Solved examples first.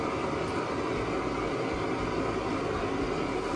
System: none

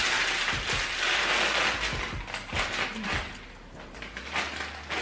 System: none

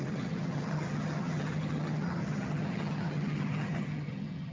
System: vocoder, HiFi-GAN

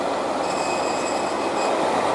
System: none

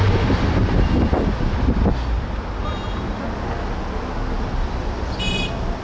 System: none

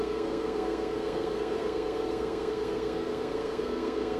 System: codec, SNAC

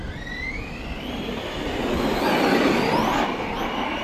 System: none